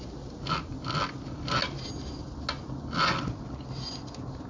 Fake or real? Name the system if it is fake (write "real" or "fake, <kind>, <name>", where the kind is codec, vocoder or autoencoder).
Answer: real